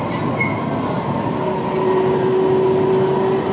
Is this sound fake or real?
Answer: real